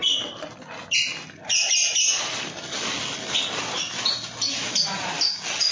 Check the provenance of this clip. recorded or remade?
recorded